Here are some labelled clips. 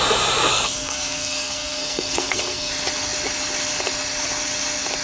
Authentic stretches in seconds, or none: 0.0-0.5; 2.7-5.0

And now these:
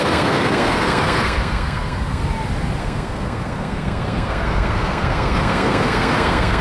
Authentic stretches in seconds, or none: 2.2-2.8

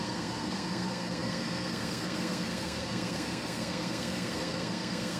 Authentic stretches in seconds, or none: none